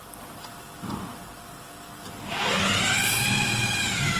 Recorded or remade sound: recorded